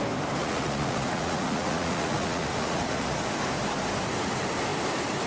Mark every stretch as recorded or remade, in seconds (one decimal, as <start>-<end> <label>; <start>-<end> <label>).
0.0-0.4 recorded; 0.4-3.2 remade; 3.2-5.3 recorded